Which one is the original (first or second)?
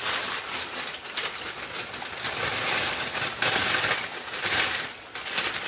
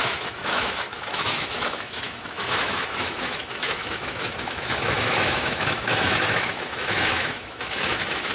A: first